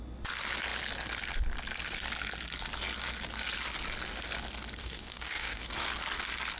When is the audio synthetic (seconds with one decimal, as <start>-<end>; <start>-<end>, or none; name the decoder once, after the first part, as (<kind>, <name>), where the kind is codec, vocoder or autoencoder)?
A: 4.8-5.7 (codec, DAC)